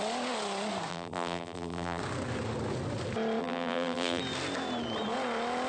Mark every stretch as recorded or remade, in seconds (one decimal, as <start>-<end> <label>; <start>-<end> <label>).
0.0-0.9 recorded; 0.9-2.0 remade; 2.0-3.4 recorded; 3.4-4.2 remade; 4.2-5.7 recorded